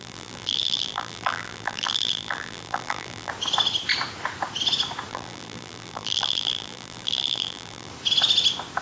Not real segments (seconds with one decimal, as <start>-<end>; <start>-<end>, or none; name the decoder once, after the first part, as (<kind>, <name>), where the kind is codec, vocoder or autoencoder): 0.0-3.3 (vocoder, BigVGAN v2); 5.1-7.9